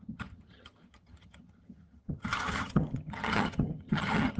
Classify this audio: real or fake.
fake